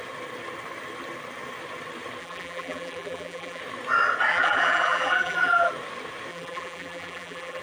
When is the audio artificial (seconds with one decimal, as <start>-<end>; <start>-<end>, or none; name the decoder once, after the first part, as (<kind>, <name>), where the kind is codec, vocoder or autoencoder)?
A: 2.2-3.6 (vocoder, BigVGAN v2); 4.3-5.7; 6.3-7.6